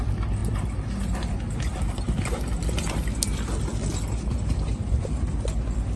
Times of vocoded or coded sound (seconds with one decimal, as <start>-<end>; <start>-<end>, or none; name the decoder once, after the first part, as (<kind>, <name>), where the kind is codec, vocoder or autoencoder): none